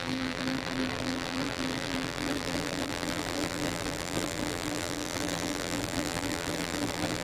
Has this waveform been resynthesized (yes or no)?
yes